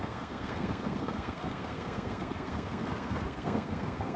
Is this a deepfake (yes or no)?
yes